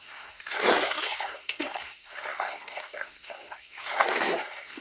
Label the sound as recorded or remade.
remade